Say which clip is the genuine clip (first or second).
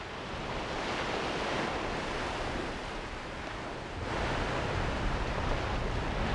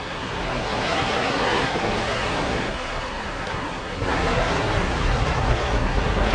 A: first